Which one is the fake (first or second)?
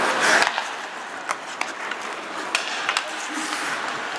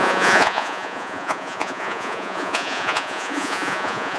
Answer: second